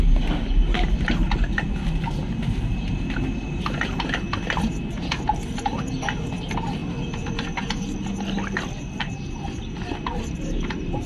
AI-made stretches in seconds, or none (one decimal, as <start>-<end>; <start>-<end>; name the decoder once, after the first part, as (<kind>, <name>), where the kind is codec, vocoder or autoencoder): none